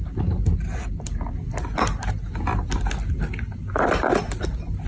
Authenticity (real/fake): real